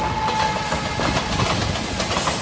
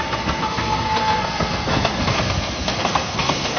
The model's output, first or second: second